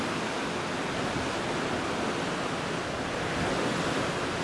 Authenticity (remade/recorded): recorded